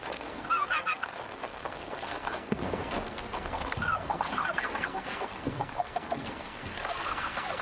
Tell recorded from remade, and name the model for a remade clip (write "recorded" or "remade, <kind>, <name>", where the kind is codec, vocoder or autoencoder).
remade, codec, SNAC